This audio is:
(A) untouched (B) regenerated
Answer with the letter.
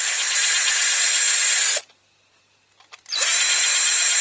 A